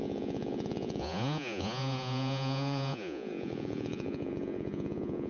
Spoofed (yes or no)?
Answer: yes